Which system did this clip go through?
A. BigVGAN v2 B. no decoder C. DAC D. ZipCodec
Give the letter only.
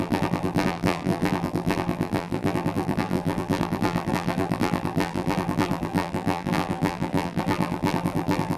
A